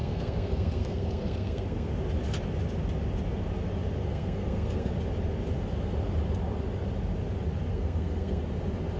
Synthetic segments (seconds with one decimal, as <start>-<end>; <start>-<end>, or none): 0.0-1.9; 4.1-4.9; 7.7-8.4